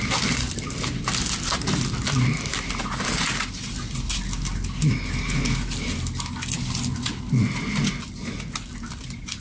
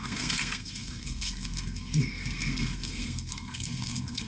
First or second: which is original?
first